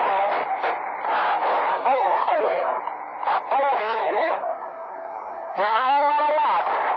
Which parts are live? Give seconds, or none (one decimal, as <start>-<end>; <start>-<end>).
0.0-1.7; 2.8-3.8; 6.1-7.0